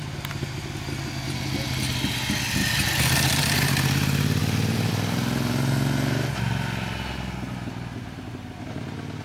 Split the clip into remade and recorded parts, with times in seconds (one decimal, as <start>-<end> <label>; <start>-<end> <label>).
0.0-4.4 recorded; 4.4-4.9 remade; 4.9-9.2 recorded

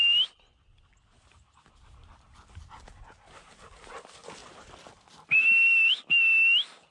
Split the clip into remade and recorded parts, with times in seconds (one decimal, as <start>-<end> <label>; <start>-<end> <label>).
0.0-3.8 remade; 3.8-4.4 recorded; 4.4-5.9 remade; 5.9-6.9 recorded

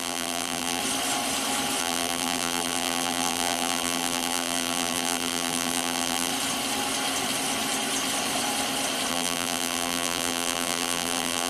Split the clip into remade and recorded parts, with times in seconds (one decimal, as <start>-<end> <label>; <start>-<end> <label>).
0.0-0.8 remade; 0.8-1.8 recorded; 1.8-6.3 remade; 6.3-9.1 recorded; 9.1-11.5 remade